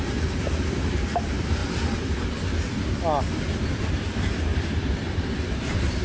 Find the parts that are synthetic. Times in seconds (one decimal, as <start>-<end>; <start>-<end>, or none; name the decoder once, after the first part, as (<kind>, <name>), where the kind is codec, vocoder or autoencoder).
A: 0.0-1.6 (vocoder, BigVGAN v2); 3.3-6.0